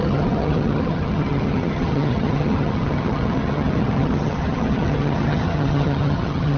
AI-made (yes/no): yes